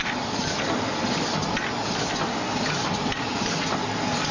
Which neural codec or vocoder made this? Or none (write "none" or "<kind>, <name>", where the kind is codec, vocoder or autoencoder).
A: none